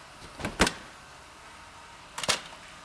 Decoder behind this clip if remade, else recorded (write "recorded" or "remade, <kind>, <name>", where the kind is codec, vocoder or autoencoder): recorded